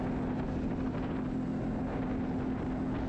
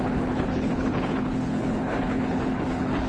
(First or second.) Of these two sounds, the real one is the first